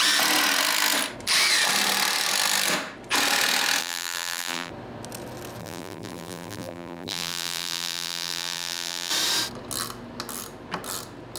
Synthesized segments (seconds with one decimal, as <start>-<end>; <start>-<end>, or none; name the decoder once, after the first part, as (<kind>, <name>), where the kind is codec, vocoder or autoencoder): 3.8-4.7 (vocoder, BigVGAN v2); 5.6-9.1